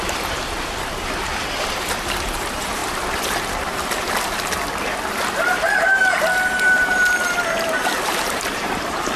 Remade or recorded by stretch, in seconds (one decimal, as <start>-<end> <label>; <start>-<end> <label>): 0.0-1.3 remade; 1.3-1.9 recorded; 1.9-9.2 remade